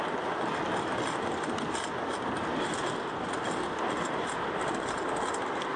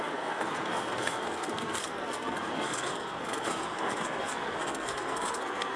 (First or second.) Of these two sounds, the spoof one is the second